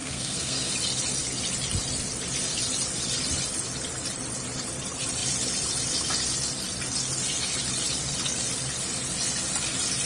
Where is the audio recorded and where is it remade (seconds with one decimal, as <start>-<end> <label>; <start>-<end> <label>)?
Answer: 0.0-0.7 remade; 0.7-10.1 recorded